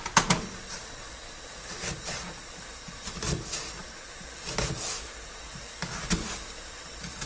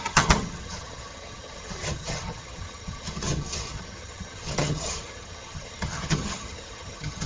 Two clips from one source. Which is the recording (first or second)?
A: first